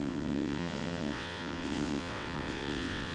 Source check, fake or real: fake